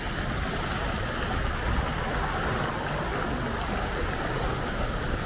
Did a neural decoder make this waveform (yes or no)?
no